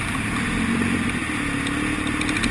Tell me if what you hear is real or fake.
real